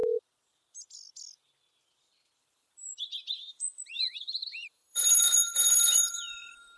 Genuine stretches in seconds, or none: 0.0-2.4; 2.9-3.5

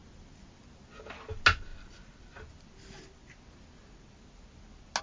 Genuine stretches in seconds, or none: 0.0-5.0

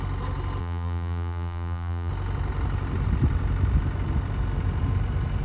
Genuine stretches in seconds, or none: 0.0-0.6; 2.1-5.4

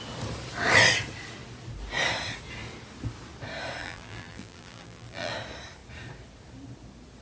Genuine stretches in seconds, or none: 0.0-3.8; 5.3-7.2

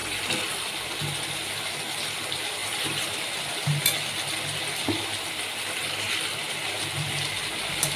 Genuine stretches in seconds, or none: none

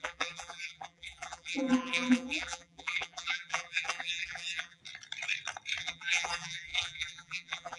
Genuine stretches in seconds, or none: 4.8-5.8

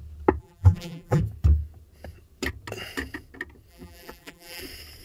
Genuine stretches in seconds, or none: 0.0-0.4; 1.2-3.7; 4.6-5.0